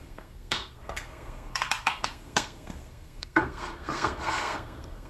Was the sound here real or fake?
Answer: fake